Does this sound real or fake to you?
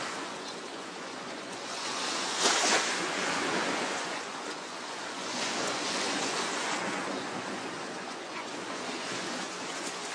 fake